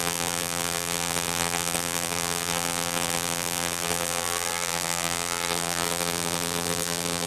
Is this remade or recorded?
remade